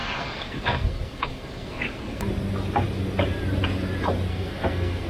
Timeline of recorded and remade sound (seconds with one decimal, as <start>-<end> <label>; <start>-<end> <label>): 0.0-2.2 remade; 2.2-4.3 recorded; 4.3-5.1 remade